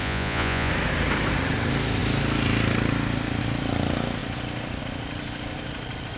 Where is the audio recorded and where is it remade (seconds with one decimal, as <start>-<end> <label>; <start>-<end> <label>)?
0.0-0.7 remade; 0.7-6.2 recorded